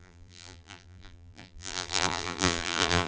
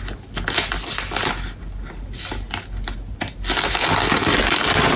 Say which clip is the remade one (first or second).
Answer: first